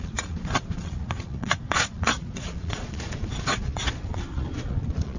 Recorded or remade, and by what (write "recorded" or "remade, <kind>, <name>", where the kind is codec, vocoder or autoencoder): remade, vocoder, Vocos